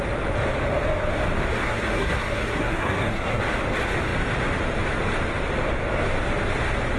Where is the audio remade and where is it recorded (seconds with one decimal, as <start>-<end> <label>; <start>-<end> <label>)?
0.0-1.6 recorded; 1.6-3.4 remade; 3.4-7.0 recorded